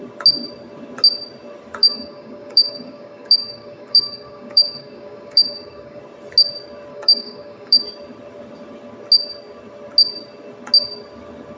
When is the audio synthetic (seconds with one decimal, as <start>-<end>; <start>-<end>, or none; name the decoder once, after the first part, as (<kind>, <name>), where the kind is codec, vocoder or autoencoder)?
1.8-6.0 (codec, DAC); 6.9-7.8